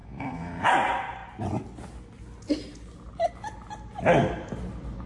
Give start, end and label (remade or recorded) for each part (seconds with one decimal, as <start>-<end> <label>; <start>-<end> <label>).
0.0-0.7 remade; 0.7-5.1 recorded